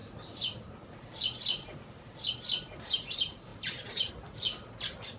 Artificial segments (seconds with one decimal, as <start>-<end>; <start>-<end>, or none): none